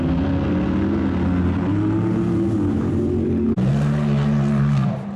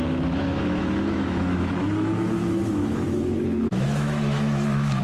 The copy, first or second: second